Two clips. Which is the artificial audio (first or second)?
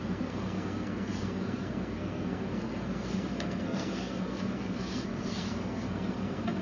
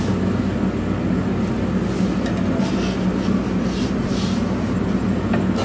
first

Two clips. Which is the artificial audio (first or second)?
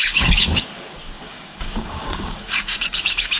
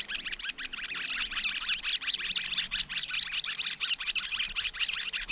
first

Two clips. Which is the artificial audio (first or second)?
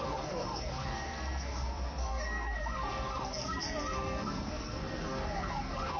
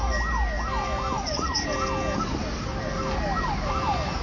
first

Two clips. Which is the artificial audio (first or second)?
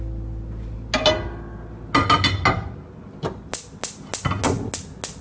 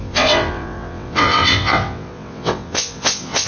second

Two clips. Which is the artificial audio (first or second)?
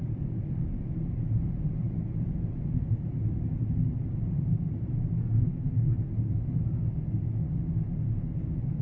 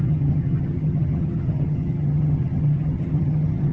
second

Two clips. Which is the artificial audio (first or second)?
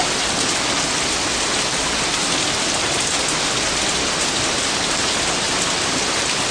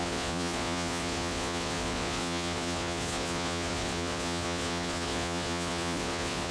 second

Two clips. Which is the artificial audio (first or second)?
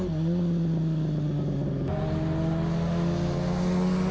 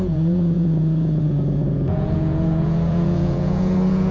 second